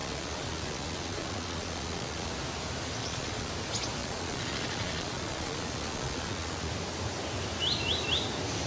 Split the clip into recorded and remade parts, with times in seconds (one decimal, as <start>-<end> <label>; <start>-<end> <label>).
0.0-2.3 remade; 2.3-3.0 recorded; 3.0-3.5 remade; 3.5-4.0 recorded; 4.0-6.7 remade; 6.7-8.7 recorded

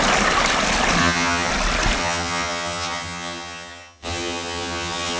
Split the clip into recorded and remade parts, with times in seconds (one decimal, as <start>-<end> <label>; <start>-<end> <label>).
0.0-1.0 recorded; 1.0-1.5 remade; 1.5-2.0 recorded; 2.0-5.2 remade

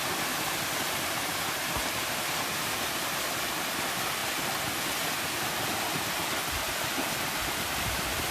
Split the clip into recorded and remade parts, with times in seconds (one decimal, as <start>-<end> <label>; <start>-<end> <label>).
0.0-8.3 recorded